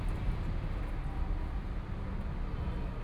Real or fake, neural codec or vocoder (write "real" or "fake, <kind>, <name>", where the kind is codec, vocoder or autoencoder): real